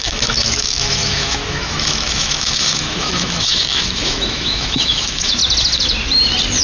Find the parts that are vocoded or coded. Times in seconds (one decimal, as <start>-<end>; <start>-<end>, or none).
0.0-5.4